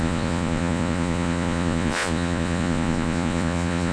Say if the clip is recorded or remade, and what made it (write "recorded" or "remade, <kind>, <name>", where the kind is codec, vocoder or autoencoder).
remade, vocoder, Vocos